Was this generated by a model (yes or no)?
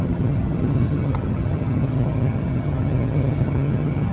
yes